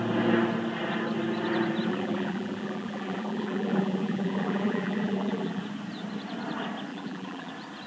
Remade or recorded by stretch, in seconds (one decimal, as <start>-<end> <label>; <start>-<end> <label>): 0.0-1.9 recorded; 1.9-5.6 remade; 5.6-6.9 recorded; 6.9-7.5 remade; 7.5-7.9 recorded